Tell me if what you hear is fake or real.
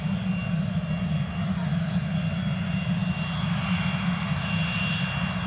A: real